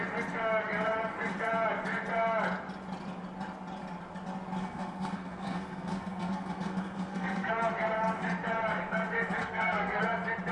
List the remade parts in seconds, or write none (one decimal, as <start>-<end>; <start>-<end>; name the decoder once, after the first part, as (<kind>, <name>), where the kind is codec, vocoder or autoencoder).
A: 4.6-7.5 (codec, SNAC); 9.4-10.0